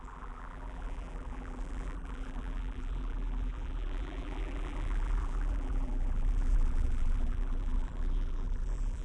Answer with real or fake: fake